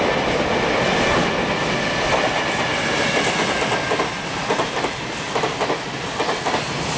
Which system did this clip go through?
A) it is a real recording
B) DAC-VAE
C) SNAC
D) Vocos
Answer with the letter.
A